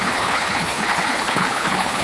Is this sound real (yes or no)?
no